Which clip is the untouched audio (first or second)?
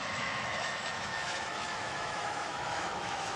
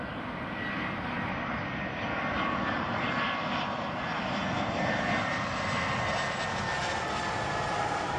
second